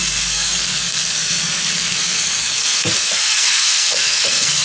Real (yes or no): no